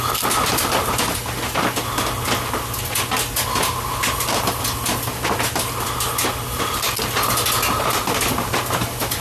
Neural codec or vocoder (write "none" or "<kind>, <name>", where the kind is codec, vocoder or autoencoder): none